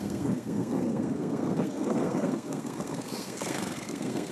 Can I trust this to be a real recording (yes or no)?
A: no